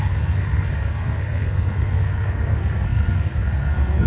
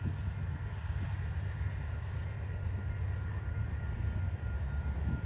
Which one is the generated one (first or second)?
first